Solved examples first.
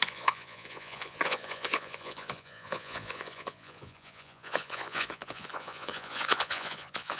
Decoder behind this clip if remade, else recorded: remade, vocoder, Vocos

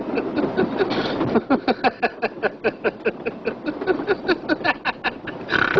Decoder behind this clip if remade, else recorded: recorded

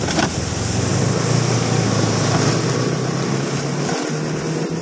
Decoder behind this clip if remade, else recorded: recorded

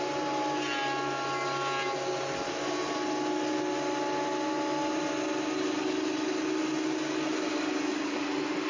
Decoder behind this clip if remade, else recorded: recorded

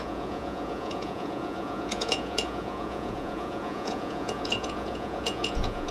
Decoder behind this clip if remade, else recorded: remade, vocoder, Vocos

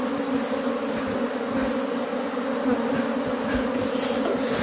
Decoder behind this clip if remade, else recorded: recorded